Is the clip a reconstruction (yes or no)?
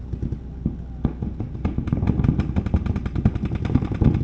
no